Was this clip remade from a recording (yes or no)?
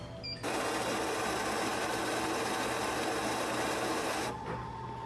no